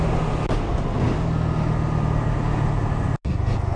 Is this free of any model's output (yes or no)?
yes